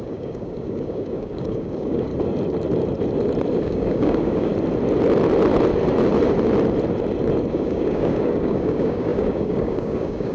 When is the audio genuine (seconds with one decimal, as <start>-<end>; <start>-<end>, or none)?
2.1-3.6; 4.5-7.5